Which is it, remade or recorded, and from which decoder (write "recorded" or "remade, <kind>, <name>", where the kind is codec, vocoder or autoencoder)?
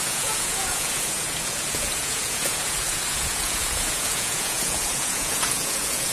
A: remade, vocoder, Vocos